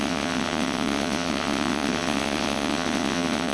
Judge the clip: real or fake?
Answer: fake